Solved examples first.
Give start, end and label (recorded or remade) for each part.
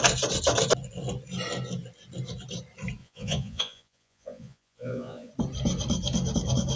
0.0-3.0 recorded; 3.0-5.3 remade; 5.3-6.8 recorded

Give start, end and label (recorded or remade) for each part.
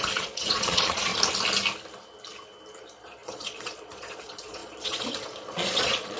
0.0-1.1 remade; 1.1-2.8 recorded; 2.8-6.2 remade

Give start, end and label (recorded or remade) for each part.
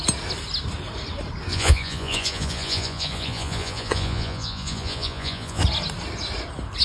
0.0-1.5 recorded; 1.5-5.6 remade; 5.6-6.8 recorded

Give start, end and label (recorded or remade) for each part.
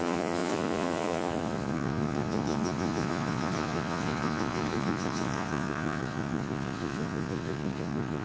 0.0-8.2 remade